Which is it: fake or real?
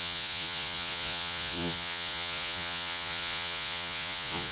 fake